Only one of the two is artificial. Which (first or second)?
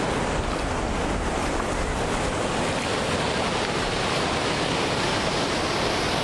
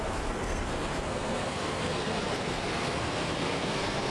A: second